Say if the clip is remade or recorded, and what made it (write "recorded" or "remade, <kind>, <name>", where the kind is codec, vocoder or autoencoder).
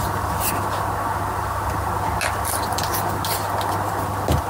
recorded